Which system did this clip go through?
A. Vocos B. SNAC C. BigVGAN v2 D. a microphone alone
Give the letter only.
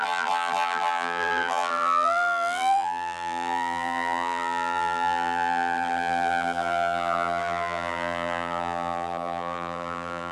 C